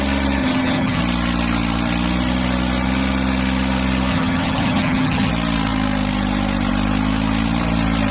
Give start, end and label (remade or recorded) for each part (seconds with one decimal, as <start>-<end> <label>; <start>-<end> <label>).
0.0-0.4 recorded; 0.4-1.0 remade; 1.0-4.1 recorded; 4.1-5.3 remade; 5.3-8.1 recorded